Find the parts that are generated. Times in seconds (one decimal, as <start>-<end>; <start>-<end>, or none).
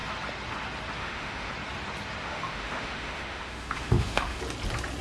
1.0-1.5; 2.2-4.4